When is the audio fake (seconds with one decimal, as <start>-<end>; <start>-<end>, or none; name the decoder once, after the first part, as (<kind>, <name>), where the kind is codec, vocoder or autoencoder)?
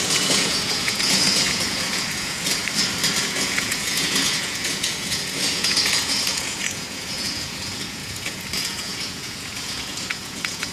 0.0-2.6 (vocoder, Vocos); 3.2-10.7